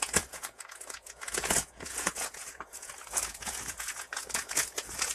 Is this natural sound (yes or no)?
no